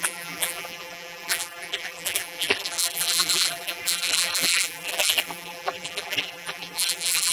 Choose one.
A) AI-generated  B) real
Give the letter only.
A